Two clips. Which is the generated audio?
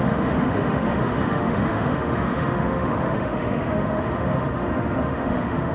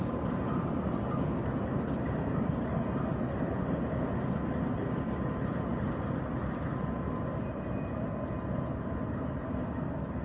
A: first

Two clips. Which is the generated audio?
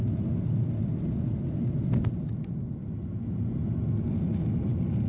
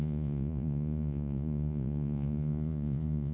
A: second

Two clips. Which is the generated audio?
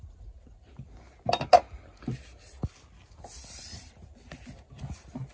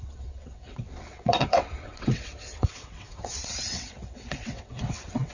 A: second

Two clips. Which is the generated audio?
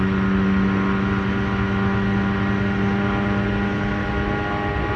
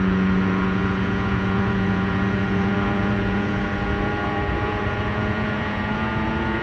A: second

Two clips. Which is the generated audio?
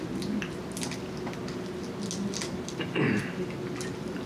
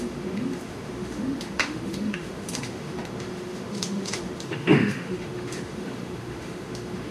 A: second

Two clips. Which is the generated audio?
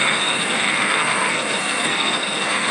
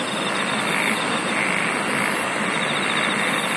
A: first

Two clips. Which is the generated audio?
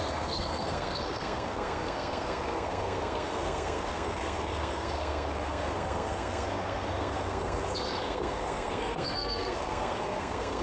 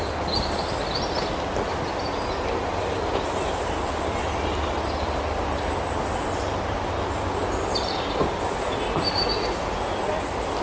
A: first